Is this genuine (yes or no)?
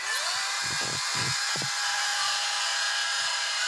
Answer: no